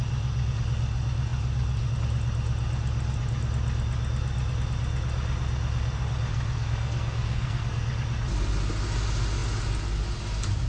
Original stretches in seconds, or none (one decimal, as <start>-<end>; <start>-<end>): 0.0-6.3; 7.8-10.7